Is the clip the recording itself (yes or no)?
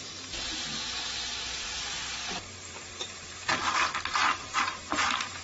no